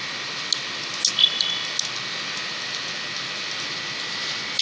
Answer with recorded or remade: recorded